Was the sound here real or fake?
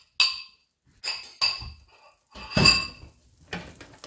real